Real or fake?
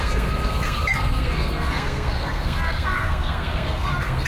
fake